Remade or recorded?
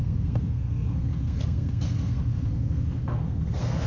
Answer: remade